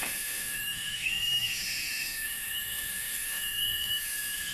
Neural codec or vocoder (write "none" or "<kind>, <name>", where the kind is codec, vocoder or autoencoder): autoencoder, DAC-VAE